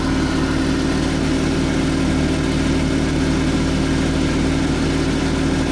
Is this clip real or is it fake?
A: real